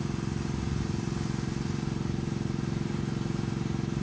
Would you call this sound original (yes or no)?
no